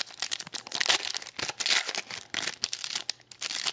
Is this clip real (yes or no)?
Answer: yes